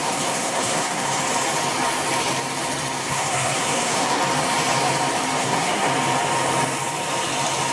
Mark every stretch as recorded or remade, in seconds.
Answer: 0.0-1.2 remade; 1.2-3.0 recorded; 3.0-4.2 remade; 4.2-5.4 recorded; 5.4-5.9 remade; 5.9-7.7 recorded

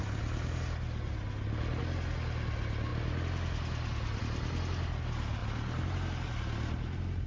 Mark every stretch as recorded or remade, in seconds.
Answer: 0.0-7.3 recorded

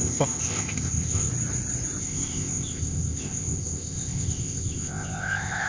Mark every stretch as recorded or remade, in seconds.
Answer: 0.0-1.3 remade; 1.3-2.0 recorded; 2.0-5.7 remade